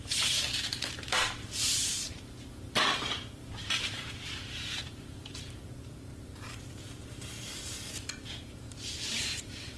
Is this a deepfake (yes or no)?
yes